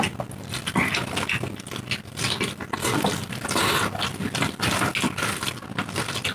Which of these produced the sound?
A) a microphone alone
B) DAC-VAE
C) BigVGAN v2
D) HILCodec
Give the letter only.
A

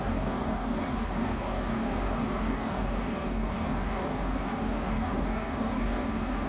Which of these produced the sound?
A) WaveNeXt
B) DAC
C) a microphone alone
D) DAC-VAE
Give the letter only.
B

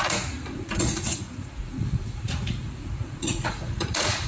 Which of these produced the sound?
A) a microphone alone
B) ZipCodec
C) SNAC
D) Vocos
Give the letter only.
D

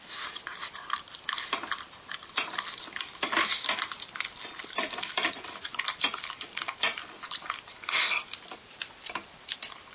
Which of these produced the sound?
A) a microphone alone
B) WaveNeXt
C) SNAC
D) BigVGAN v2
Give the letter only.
A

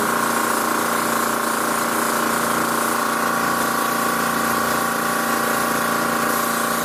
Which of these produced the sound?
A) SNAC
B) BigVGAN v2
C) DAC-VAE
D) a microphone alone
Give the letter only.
D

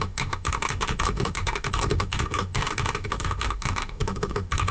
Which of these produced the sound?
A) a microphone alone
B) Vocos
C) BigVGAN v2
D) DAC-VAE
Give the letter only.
D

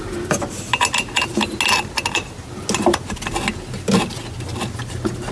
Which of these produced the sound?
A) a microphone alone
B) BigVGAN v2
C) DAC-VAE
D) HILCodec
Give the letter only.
A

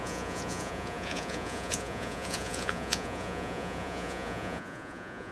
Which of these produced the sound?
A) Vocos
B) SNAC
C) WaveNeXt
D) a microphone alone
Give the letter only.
A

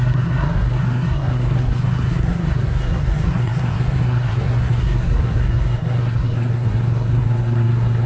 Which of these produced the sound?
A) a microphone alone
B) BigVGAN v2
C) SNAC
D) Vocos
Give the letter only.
C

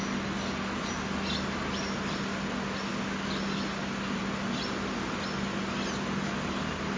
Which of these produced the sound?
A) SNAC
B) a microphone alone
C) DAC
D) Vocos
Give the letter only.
B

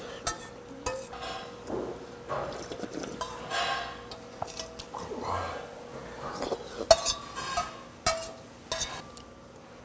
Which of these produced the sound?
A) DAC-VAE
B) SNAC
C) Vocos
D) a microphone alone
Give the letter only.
D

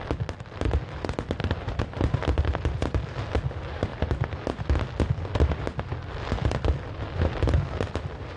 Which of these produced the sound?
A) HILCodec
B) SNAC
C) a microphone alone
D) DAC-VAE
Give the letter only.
C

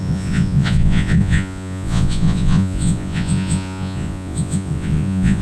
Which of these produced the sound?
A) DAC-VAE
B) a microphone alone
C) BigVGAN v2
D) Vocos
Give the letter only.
D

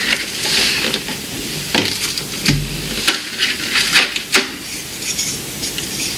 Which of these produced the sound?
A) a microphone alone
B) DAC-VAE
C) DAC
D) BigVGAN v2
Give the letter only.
A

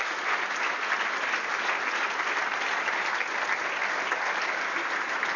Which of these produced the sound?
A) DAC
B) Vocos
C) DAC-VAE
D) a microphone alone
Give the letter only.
D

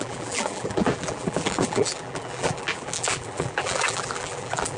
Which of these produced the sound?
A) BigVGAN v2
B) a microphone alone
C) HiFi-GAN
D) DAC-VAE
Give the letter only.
A